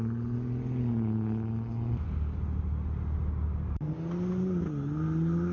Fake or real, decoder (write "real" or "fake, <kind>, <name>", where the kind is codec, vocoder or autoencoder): real